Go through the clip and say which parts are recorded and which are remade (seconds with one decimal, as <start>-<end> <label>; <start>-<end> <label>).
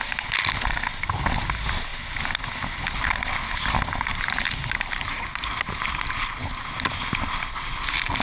0.0-8.2 recorded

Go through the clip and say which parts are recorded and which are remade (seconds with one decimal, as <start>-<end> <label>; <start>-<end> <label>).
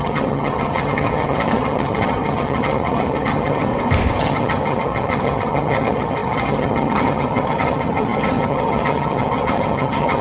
0.0-3.7 remade; 3.7-4.2 recorded; 4.2-10.2 remade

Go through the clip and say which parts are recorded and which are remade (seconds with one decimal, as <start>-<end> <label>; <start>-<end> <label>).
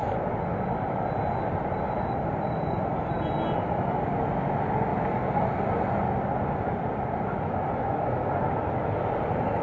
0.0-9.6 recorded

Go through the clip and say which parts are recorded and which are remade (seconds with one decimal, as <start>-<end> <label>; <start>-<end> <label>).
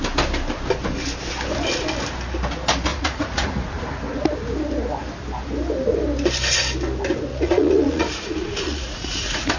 0.0-2.9 recorded; 2.9-4.0 remade; 4.0-7.3 recorded; 7.3-9.6 remade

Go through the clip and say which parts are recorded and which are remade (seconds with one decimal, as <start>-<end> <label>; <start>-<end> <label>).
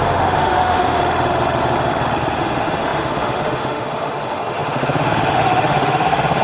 0.0-1.0 remade; 1.0-2.4 recorded; 2.4-6.4 remade